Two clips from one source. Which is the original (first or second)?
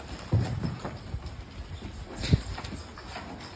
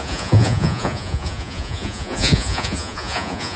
first